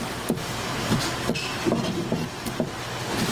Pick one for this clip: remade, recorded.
recorded